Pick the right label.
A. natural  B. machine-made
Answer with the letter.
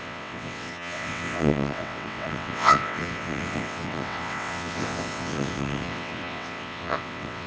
B